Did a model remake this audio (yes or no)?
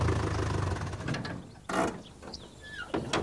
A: no